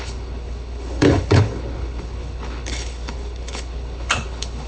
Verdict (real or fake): fake